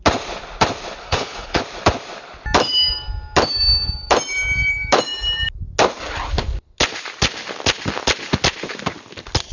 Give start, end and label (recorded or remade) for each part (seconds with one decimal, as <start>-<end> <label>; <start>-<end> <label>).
0.0-1.0 recorded; 1.0-1.6 remade; 1.6-9.5 recorded